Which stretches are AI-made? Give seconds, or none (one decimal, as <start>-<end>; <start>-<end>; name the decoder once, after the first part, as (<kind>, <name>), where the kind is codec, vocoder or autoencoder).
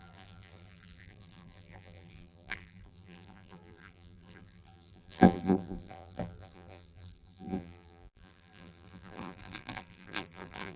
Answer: 0.0-10.8 (vocoder, BigVGAN v2)